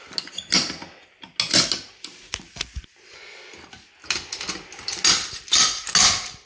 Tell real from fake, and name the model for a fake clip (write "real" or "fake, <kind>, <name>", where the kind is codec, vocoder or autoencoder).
real